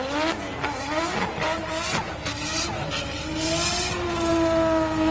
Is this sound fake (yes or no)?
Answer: no